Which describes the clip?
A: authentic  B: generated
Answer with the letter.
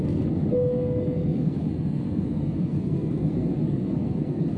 B